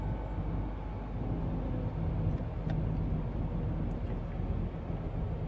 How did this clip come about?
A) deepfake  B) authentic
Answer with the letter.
B